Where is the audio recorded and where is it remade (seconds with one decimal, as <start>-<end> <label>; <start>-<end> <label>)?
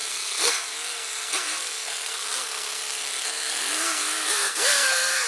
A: 0.0-5.3 remade